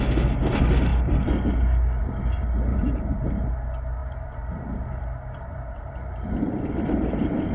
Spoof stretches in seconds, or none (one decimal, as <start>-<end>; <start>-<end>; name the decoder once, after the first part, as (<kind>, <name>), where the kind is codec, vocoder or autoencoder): 2.7-3.5 (vocoder, BigVGAN v2); 4.0-7.5